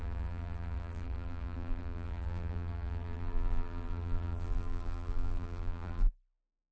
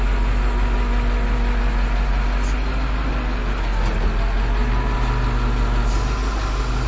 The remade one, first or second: first